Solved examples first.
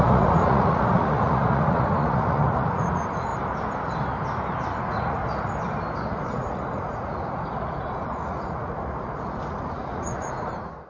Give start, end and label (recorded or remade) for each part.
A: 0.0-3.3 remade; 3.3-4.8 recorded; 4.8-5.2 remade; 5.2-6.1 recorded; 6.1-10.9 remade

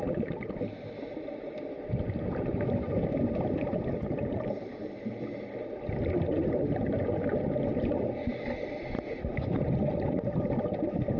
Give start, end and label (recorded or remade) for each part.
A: 0.0-11.2 recorded